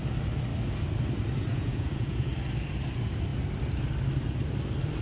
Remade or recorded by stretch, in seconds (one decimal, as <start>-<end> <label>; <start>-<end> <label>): 0.0-1.5 recorded; 1.5-2.3 remade; 2.3-5.0 recorded